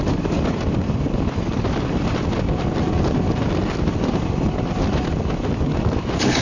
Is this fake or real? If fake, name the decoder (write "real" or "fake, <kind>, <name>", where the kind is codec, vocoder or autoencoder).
real